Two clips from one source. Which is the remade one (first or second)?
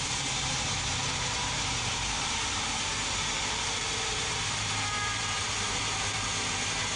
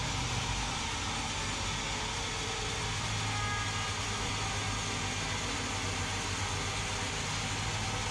first